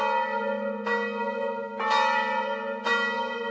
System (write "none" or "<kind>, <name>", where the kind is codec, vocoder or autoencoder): none